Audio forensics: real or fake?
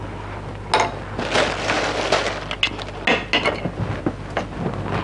real